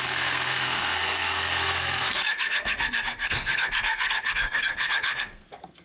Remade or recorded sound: remade